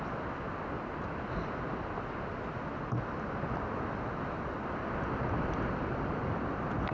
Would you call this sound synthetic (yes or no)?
no